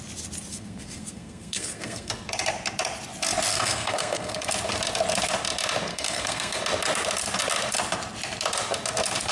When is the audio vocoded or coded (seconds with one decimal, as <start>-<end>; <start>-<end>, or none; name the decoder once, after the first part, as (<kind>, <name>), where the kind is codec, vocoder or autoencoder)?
0.5-2.1 (codec, SNAC); 3.5-4.5; 5.9-6.6